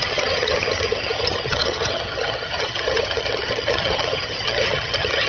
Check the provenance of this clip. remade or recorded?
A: remade